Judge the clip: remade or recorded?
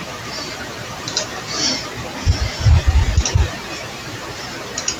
remade